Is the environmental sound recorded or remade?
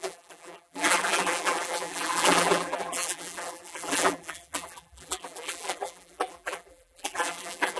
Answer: remade